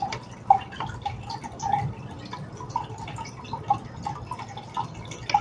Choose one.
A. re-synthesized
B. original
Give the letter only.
B